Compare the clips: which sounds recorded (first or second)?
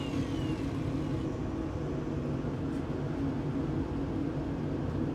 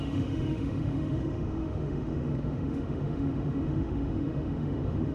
first